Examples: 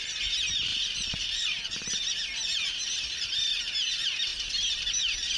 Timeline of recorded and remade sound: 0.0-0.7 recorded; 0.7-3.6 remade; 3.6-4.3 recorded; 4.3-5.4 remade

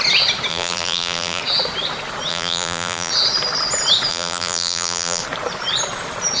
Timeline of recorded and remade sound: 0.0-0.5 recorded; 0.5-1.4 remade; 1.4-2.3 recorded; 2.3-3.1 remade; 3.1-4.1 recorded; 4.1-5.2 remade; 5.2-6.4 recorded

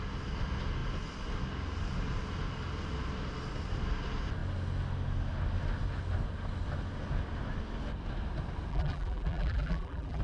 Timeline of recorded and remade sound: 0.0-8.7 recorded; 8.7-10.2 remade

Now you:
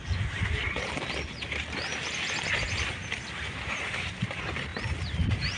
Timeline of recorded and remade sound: 0.0-3.0 remade; 3.0-4.1 recorded; 4.1-5.6 remade